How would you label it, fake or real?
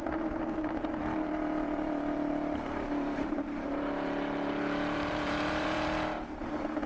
fake